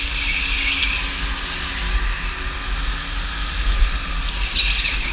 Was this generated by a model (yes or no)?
no